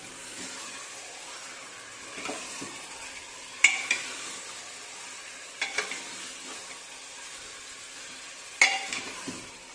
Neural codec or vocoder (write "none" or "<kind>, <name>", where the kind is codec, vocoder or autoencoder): none